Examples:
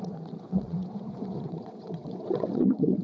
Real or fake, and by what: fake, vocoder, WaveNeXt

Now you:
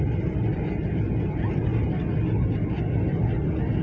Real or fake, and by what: real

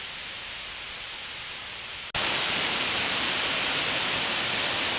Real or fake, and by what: real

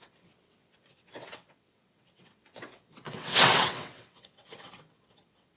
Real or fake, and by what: fake, vocoder, WaveNeXt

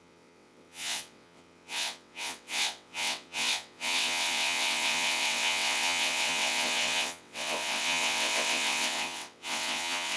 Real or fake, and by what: fake, vocoder, WaveNeXt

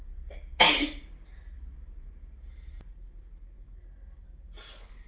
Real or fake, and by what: real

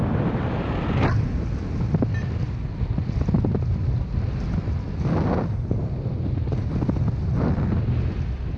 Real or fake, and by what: real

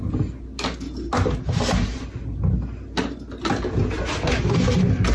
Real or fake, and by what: real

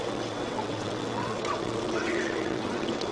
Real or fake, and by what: fake, vocoder, WaveNeXt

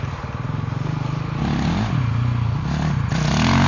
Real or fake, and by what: real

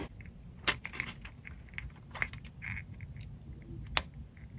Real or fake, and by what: real